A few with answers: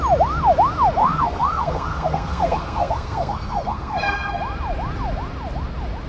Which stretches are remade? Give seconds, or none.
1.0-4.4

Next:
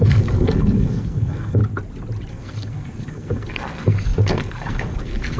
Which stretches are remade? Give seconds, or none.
0.0-1.6; 2.3-5.4

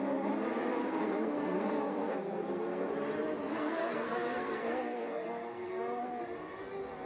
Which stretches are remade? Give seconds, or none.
0.8-2.9; 3.4-6.2